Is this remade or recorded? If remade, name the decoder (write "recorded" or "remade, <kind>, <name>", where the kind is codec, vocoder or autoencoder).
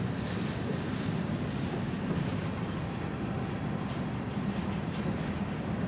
recorded